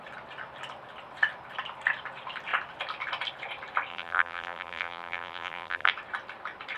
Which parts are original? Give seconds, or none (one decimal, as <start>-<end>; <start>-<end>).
0.0-3.9; 5.9-6.8

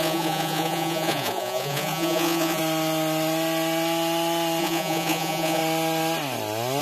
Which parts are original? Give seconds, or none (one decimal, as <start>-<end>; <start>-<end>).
2.6-4.6; 5.6-6.8

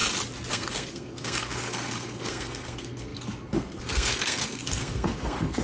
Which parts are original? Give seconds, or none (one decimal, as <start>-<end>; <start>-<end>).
0.0-0.5

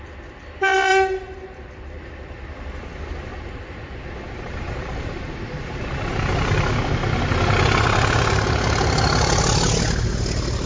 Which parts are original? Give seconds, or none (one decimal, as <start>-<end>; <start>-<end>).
0.0-0.9; 2.0-3.3; 6.1-10.7

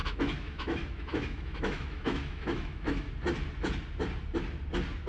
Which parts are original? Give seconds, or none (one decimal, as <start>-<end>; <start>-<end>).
3.1-5.1